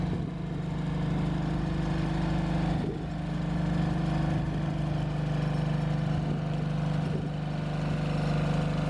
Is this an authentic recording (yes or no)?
yes